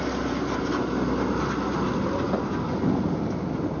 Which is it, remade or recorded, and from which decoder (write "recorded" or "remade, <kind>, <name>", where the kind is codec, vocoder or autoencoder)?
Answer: recorded